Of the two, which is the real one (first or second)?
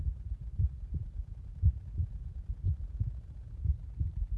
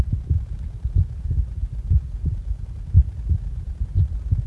second